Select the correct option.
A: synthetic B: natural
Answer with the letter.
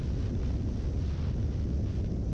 B